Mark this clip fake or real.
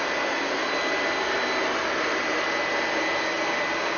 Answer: real